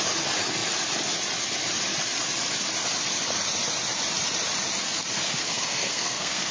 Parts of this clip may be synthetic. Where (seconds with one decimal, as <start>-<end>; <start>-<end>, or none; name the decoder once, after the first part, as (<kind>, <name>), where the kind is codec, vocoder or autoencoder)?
5.4-6.5 (codec, SNAC)